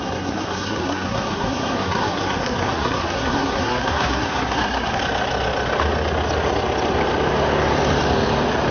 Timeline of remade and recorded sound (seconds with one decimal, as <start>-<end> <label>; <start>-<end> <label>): 0.0-5.0 remade; 5.0-8.7 recorded